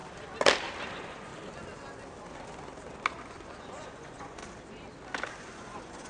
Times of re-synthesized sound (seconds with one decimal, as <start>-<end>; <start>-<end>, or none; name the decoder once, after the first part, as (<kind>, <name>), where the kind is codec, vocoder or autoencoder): 0.9-1.3 (vocoder, Vocos); 3.1-4.4; 5.3-6.1